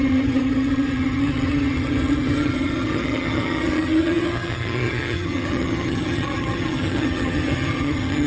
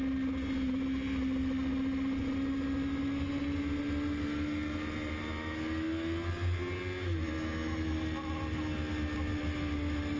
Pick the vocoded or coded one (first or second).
first